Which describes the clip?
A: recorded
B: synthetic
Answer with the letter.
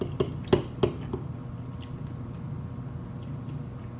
A